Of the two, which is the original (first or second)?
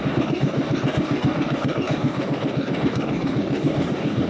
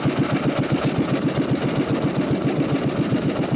second